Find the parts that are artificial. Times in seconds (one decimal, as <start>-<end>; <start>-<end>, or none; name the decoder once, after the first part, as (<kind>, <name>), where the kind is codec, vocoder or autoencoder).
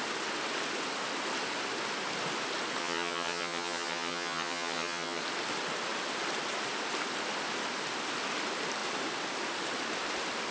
2.8-5.2 (vocoder, HiFi-GAN)